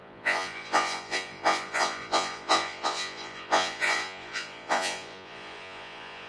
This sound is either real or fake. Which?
fake